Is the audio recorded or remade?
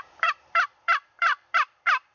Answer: remade